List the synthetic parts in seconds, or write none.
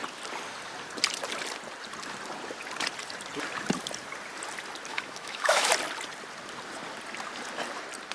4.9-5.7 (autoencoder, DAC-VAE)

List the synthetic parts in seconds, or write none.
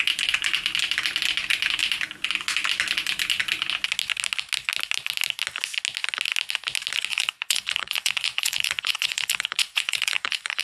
7.1-10.6 (vocoder, Vocos)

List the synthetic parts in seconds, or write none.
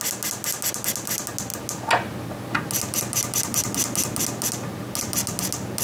none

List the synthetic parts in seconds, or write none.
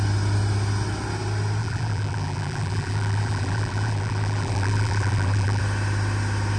1.6-5.6 (vocoder, BigVGAN v2)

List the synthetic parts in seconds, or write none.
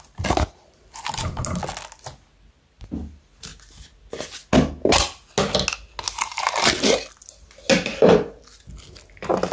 none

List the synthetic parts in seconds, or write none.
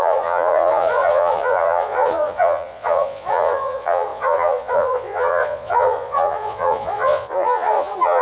0.0-8.2 (vocoder, Vocos)